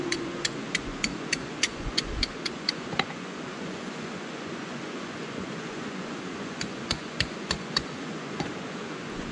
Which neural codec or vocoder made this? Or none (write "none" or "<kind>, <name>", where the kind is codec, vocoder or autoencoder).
vocoder, Vocos